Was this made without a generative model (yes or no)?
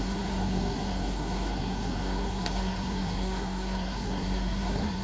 no